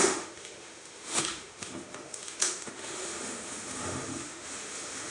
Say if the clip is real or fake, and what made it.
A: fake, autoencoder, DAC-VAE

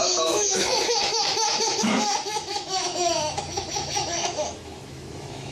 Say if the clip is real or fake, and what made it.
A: fake, autoencoder, DAC-VAE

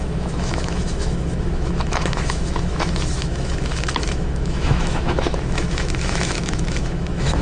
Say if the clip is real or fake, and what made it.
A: fake, autoencoder, DAC-VAE